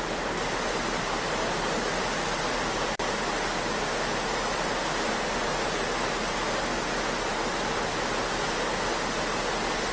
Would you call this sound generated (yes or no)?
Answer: no